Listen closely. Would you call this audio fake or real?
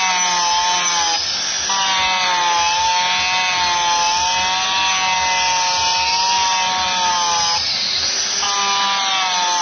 real